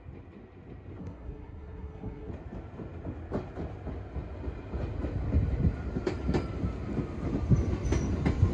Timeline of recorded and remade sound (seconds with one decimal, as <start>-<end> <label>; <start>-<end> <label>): 0.0-1.0 recorded; 1.0-2.3 remade; 2.3-8.5 recorded